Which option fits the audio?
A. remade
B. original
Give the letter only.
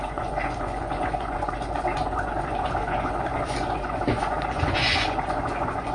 A